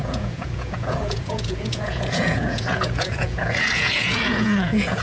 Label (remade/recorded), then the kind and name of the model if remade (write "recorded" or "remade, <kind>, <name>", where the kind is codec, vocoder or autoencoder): remade, vocoder, Vocos